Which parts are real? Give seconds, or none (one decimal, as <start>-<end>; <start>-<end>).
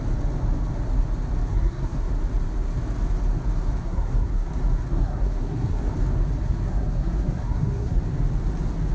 0.0-1.5; 2.1-3.8; 4.5-4.9; 5.9-6.4; 8.0-8.9